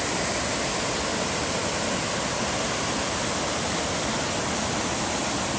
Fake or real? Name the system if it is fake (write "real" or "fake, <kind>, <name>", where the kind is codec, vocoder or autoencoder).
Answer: real